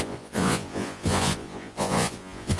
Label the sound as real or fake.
fake